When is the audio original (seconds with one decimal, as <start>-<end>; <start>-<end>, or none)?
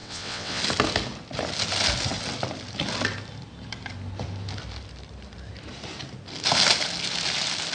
0.6-7.7